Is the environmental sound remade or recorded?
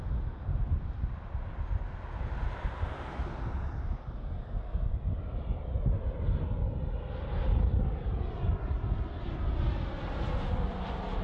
recorded